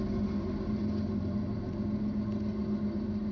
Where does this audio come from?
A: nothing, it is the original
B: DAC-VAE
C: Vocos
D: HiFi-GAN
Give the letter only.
A